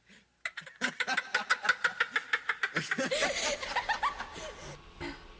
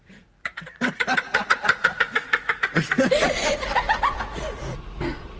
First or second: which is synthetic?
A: second